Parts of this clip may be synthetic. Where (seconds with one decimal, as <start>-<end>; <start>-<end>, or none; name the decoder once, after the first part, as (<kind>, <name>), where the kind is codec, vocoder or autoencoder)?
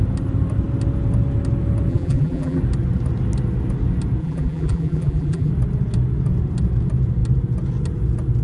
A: 1.9-2.6 (vocoder, BigVGAN v2); 4.2-5.5